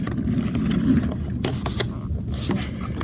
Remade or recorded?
recorded